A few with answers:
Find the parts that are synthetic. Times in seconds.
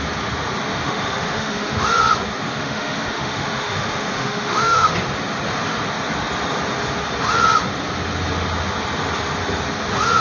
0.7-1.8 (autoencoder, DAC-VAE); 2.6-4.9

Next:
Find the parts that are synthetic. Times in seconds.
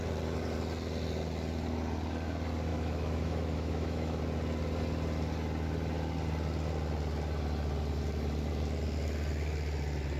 2.7-4.2 (autoencoder, DAC-VAE)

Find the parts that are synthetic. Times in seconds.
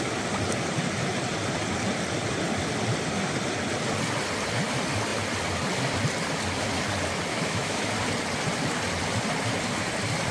7.3-7.9 (autoencoder, DAC-VAE)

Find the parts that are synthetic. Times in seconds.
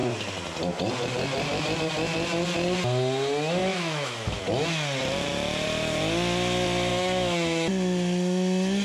3.6-4.4 (autoencoder, DAC-VAE); 6.9-7.7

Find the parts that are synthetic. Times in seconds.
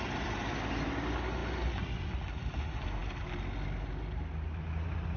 none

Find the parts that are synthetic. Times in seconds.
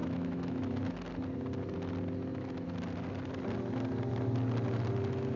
0.0-0.9 (autoencoder, DAC-VAE)